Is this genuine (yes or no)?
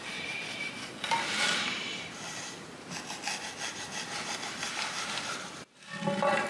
yes